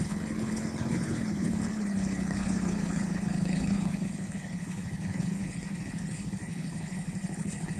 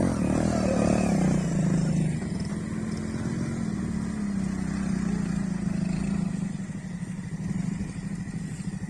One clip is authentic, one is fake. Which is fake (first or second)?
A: first